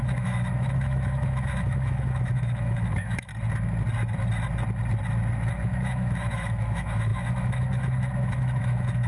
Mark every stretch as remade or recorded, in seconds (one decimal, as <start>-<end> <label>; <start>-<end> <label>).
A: 0.0-3.3 remade; 3.3-5.5 recorded; 5.5-9.1 remade